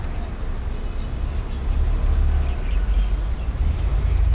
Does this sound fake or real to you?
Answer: real